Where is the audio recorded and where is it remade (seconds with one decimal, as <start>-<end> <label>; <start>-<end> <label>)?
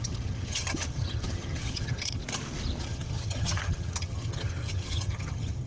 0.0-2.2 remade; 2.2-2.8 recorded; 2.8-5.7 remade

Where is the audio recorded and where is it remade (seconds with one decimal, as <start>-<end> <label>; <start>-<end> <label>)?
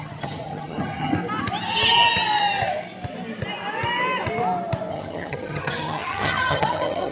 0.0-1.1 remade; 1.1-4.9 recorded; 4.9-7.1 remade